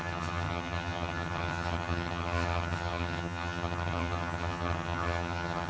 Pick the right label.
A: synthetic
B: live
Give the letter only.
A